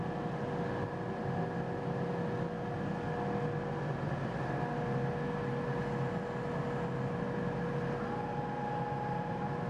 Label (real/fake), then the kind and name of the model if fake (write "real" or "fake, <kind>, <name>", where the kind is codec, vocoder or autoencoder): real